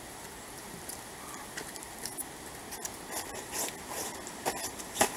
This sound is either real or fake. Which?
real